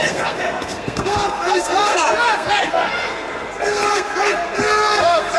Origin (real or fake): fake